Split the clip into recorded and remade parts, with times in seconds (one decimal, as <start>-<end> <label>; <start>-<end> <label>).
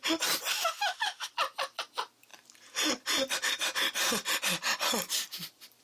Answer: 0.0-0.5 recorded; 0.5-1.3 remade; 1.3-5.8 recorded